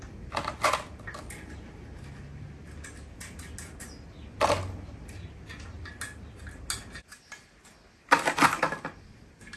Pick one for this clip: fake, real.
real